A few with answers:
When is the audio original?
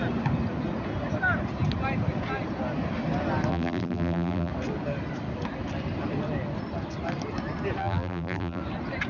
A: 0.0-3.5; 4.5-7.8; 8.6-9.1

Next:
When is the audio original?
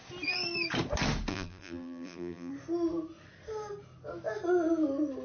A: 0.0-1.3; 2.5-5.2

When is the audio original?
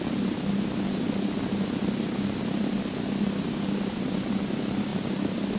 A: 0.0-5.6